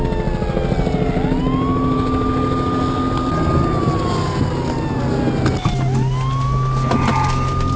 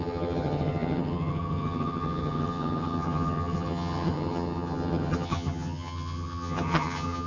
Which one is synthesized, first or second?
second